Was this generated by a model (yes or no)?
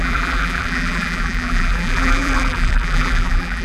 yes